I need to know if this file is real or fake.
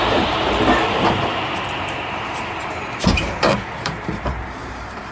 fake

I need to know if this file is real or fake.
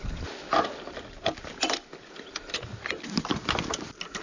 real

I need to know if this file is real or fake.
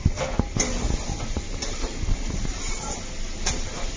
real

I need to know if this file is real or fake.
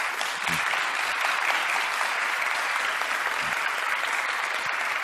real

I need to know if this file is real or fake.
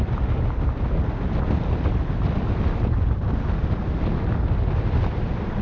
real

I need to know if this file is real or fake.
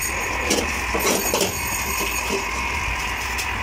real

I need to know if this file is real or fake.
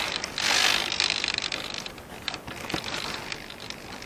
real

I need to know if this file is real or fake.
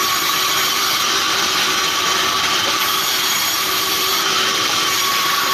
fake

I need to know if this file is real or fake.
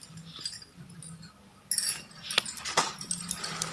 real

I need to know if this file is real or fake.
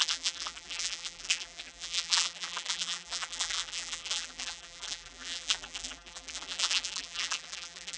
fake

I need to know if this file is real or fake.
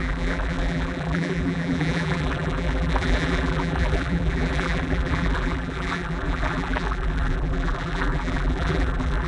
fake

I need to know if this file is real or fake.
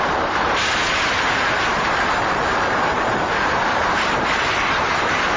fake